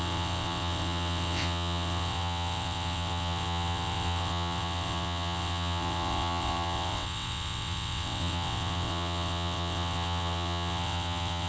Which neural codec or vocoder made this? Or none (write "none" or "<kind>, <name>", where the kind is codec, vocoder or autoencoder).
vocoder, WaveNeXt